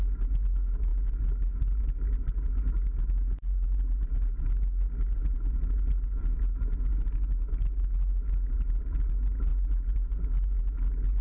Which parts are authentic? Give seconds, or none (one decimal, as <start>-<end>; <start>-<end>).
0.0-11.2